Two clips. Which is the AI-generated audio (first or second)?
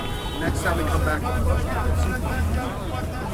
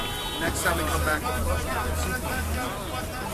first